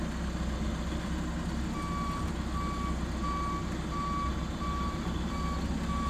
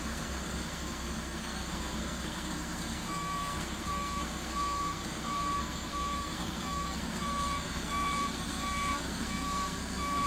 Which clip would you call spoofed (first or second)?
second